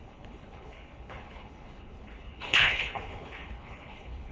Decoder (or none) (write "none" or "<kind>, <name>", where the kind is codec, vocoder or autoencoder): codec, HILCodec